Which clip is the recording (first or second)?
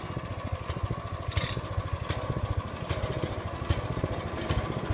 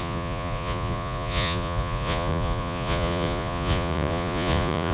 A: first